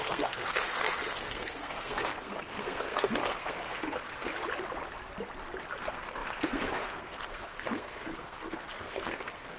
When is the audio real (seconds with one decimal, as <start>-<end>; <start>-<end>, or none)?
4.3-5.8